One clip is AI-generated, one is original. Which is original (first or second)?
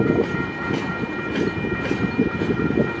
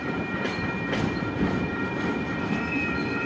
first